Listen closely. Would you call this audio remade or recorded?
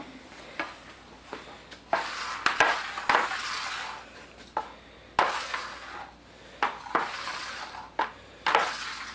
recorded